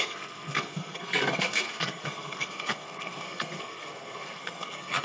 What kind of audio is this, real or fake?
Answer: fake